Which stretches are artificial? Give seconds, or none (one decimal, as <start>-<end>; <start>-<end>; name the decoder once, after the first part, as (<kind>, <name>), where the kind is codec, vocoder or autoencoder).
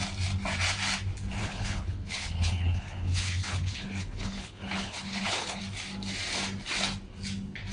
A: 1.4-5.6 (codec, HILCodec)